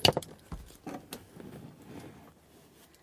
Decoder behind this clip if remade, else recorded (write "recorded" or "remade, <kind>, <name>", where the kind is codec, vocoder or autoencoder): recorded